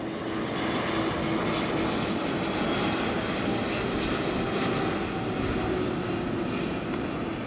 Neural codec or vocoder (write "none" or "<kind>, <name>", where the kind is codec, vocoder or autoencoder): none